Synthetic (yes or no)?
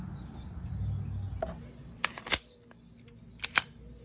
no